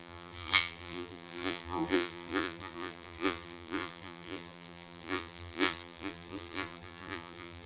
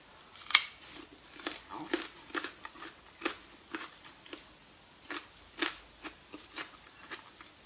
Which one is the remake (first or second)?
first